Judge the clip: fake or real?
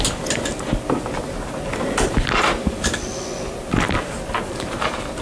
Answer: real